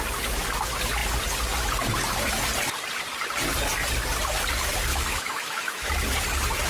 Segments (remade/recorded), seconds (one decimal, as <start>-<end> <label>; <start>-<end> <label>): 0.0-4.9 recorded; 4.9-5.9 remade; 5.9-6.7 recorded